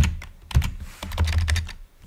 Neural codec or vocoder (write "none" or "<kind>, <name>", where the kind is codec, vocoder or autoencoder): none